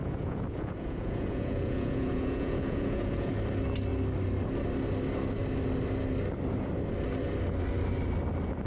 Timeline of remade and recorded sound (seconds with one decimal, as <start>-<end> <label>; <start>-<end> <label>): 0.0-3.3 remade; 3.3-8.7 recorded